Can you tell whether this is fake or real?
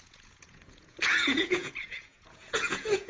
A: fake